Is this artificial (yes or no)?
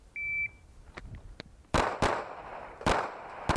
no